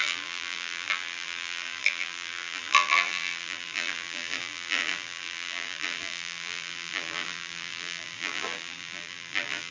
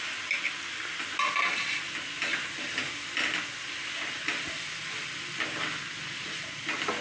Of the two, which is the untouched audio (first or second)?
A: second